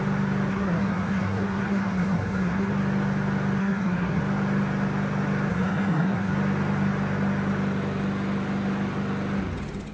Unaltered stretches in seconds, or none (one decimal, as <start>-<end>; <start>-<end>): 0.0-0.5; 2.7-3.6; 4.2-5.5; 6.3-9.9